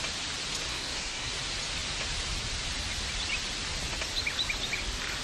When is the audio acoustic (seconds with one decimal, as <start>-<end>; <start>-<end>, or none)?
0.0-0.7; 1.3-5.2